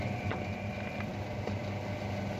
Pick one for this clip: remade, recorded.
recorded